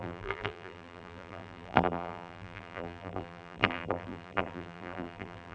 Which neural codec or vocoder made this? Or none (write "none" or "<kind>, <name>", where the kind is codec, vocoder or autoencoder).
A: vocoder, BigVGAN v2